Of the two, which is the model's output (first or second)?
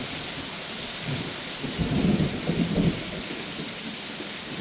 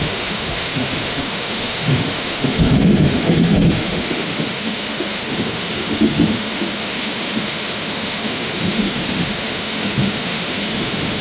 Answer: second